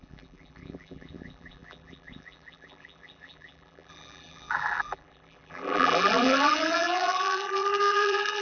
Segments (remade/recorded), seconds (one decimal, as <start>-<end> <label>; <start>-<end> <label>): 0.0-8.4 remade